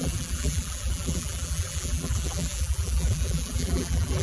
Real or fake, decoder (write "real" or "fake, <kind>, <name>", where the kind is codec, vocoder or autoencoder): fake, vocoder, BigVGAN v2